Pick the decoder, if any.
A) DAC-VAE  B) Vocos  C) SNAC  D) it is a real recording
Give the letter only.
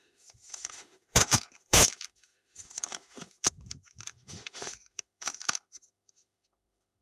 A